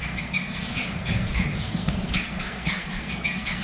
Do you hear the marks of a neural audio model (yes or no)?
yes